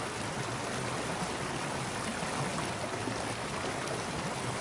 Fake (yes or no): no